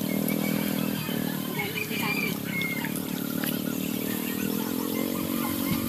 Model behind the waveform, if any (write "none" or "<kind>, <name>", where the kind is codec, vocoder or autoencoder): vocoder, BigVGAN v2